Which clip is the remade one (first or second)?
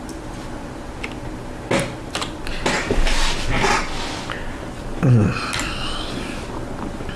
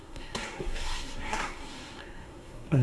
second